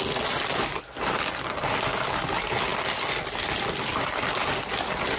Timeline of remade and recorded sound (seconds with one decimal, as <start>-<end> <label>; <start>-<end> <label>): 0.0-5.2 recorded